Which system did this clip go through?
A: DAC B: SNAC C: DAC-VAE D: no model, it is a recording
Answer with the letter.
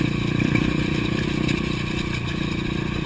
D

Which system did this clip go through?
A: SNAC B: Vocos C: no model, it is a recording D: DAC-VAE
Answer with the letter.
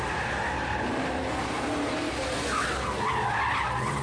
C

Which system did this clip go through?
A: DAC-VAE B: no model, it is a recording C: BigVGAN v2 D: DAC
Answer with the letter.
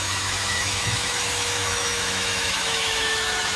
A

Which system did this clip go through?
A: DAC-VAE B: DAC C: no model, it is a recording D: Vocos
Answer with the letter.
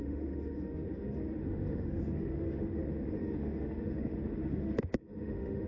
A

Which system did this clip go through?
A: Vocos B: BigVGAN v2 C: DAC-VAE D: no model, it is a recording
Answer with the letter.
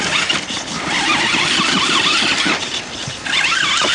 D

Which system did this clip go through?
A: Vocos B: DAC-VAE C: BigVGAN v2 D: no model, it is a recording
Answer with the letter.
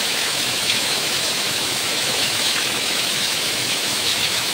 B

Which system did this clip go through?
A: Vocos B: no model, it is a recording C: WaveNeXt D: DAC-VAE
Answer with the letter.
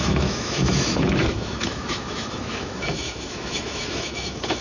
D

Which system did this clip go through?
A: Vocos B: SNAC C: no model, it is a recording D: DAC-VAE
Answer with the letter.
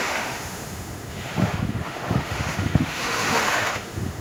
D